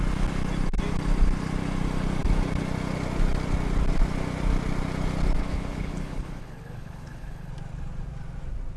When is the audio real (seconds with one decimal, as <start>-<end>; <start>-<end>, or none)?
0.0-5.4; 7.5-8.8